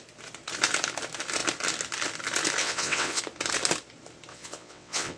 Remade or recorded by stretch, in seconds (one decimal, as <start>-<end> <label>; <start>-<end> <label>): 0.0-2.6 recorded; 2.6-3.2 remade; 3.2-4.3 recorded; 4.3-5.2 remade